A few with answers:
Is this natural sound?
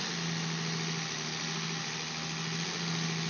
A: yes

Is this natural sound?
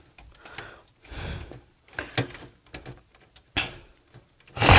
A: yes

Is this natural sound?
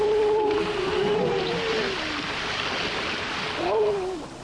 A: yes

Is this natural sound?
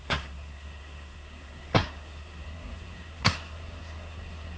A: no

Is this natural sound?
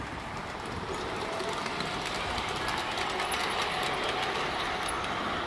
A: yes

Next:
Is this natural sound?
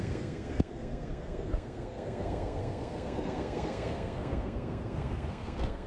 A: no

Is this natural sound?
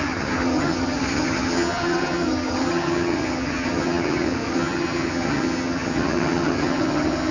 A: no